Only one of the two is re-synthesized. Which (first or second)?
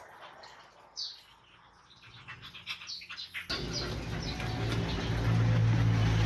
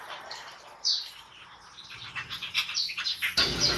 second